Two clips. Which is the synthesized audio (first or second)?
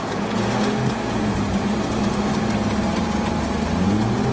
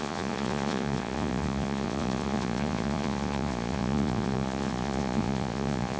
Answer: second